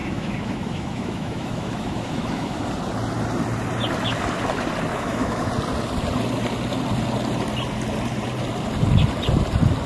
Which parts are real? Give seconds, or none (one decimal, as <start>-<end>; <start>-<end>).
2.6-4.9; 5.5-9.9